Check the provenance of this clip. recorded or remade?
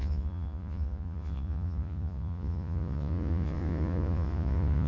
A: remade